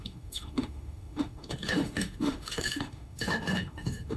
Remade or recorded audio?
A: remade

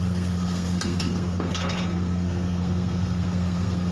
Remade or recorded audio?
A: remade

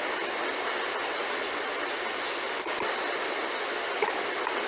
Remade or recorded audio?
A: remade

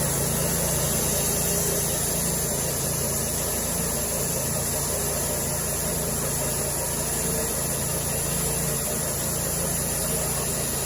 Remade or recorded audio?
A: recorded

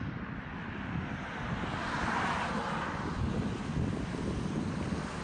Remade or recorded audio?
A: recorded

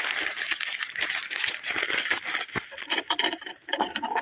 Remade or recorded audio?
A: recorded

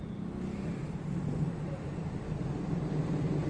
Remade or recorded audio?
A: remade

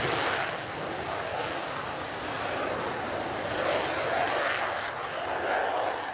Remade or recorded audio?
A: recorded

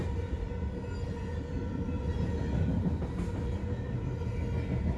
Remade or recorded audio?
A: recorded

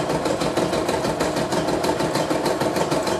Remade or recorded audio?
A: recorded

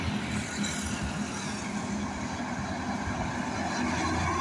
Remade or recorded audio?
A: recorded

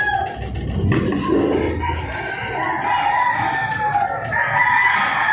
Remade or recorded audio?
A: recorded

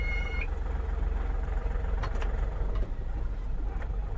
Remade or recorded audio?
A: remade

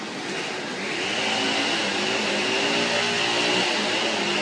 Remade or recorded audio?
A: recorded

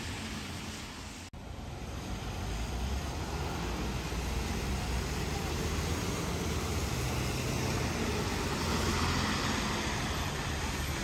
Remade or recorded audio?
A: recorded